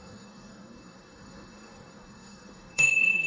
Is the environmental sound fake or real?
fake